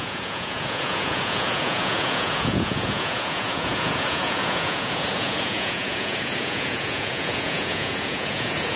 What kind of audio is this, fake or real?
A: fake